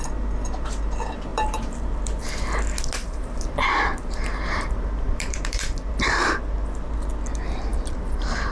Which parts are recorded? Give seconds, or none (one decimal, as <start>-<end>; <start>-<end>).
0.0-1.3; 2.2-3.0; 5.9-7.7

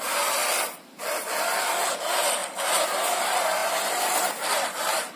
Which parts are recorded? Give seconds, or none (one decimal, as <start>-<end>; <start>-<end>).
none

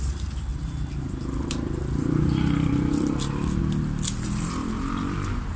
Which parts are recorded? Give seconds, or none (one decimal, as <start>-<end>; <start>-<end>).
0.0-0.5; 3.6-4.6

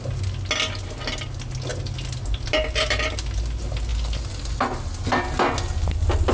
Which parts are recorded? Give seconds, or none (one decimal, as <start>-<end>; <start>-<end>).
0.0-6.3

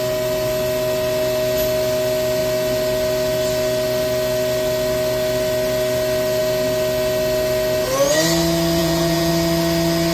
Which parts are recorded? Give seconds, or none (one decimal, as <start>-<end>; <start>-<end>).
0.0-8.8; 9.3-10.1

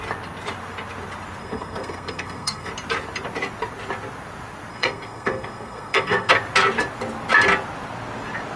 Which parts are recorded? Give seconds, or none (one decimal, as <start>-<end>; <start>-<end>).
0.0-1.4; 2.7-4.7; 6.3-8.6

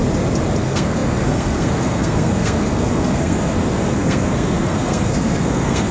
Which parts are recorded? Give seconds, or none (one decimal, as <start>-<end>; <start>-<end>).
0.0-0.6